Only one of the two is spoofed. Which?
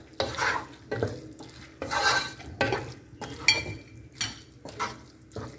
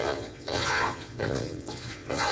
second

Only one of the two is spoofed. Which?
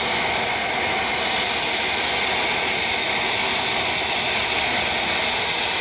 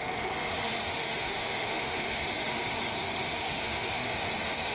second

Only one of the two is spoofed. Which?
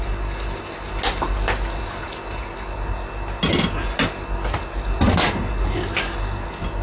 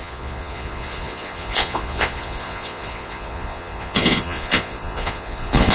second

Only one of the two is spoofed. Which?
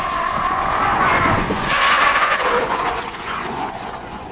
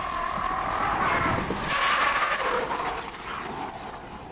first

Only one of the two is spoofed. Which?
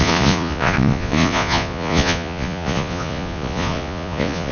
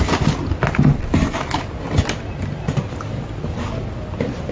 first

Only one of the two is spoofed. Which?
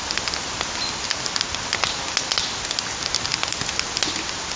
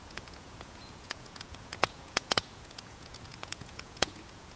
second